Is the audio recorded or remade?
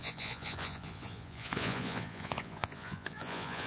remade